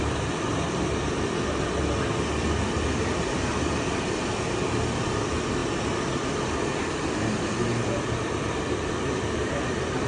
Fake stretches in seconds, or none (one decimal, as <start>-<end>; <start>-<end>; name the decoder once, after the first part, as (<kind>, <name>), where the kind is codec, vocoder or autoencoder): 0.0-5.6 (vocoder, BigVGAN v2); 6.3-10.1